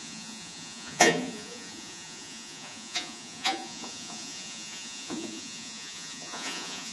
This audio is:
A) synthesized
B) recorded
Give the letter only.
A